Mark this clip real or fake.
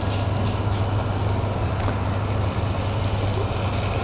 real